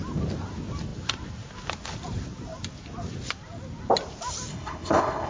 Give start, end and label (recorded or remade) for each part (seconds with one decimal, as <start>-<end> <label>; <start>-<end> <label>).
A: 0.0-4.5 recorded; 4.5-5.3 remade